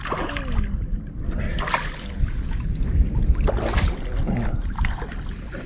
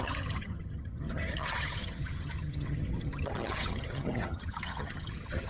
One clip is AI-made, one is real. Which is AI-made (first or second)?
second